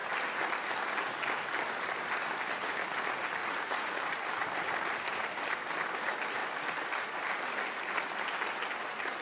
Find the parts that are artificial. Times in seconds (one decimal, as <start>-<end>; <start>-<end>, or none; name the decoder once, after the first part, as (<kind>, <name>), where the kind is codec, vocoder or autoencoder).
3.4-3.9 (vocoder, Vocos)